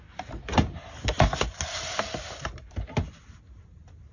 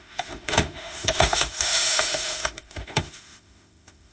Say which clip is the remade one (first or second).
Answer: second